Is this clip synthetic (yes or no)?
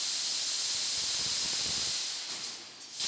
no